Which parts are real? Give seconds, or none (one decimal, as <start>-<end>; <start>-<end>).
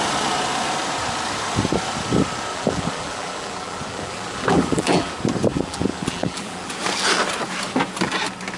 0.0-2.5; 5.1-5.5; 6.7-8.6